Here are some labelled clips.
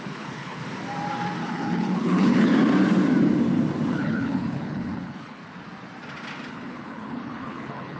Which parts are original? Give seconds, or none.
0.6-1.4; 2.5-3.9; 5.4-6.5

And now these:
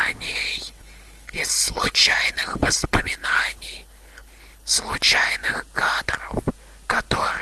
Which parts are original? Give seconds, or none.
0.0-0.4; 4.8-7.4

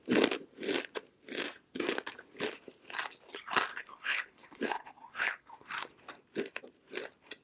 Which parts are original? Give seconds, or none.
0.0-3.7; 5.5-7.4

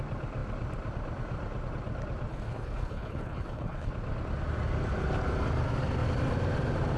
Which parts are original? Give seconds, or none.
0.0-2.3; 3.9-7.0